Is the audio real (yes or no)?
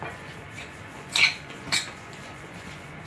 no